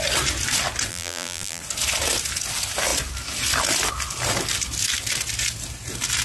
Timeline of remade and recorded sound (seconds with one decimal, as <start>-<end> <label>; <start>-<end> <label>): 0.0-0.9 recorded; 0.9-1.6 remade; 1.6-6.2 recorded